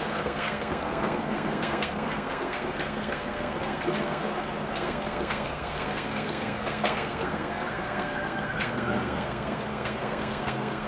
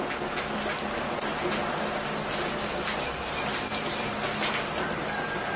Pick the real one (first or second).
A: second